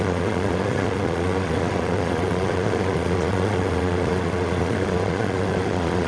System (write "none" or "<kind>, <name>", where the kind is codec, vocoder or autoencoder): vocoder, Vocos